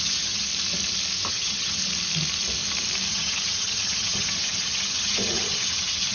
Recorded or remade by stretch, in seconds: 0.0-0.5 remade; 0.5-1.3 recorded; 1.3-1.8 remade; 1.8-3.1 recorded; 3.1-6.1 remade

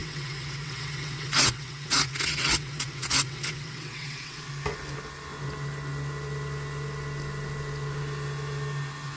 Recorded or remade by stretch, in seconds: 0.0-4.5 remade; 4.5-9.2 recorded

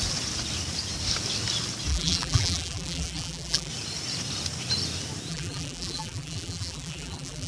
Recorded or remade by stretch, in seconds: 0.0-1.9 recorded; 1.9-3.7 remade; 3.7-5.3 recorded; 5.3-7.5 remade

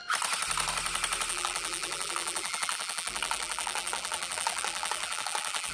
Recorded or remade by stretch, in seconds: 0.0-1.3 recorded; 1.3-5.7 remade